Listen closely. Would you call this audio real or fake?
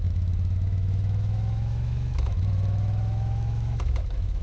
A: fake